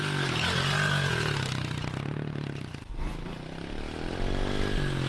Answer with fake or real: real